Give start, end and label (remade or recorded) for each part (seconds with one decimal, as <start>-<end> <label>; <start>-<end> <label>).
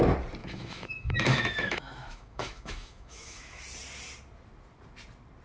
0.0-0.4 recorded; 0.4-3.6 remade; 3.6-5.4 recorded